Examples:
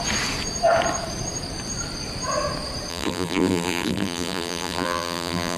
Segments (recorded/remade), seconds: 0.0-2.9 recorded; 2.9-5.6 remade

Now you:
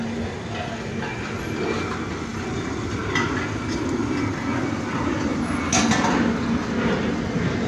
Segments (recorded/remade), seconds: 0.0-5.3 recorded; 5.3-5.8 remade; 5.8-7.7 recorded

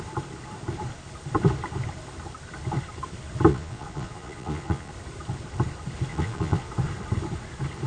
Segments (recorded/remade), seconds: 0.0-3.5 recorded; 3.5-4.9 remade; 4.9-6.1 recorded; 6.1-6.7 remade; 6.7-7.9 recorded

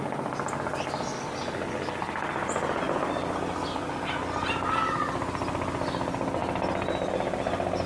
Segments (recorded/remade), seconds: 0.0-7.9 recorded

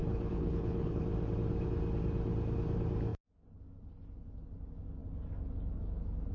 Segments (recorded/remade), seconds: 0.0-1.0 remade; 1.0-6.3 recorded

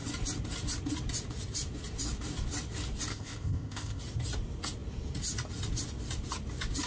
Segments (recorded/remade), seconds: 0.0-3.1 recorded; 3.1-4.0 remade; 4.0-6.9 recorded